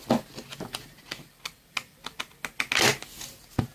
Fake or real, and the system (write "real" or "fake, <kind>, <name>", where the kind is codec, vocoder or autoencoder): real